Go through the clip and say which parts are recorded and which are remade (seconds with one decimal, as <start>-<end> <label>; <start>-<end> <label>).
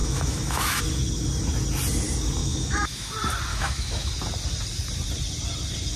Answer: 0.0-0.8 remade; 0.8-2.4 recorded; 2.4-3.1 remade; 3.1-3.5 recorded; 3.5-4.1 remade; 4.1-6.0 recorded